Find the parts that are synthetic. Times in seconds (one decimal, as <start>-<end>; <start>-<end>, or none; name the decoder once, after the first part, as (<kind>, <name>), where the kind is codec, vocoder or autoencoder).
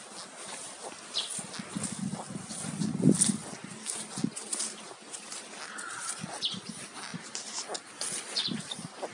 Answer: none